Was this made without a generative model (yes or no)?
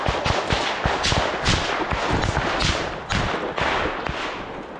yes